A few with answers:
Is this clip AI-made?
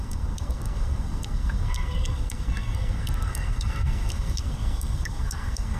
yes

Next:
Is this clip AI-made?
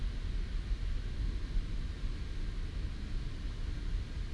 no